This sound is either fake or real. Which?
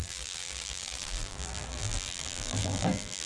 fake